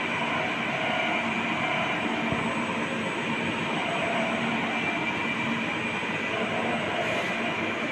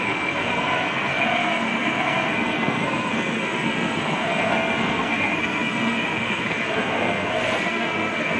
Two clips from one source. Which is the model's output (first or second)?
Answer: second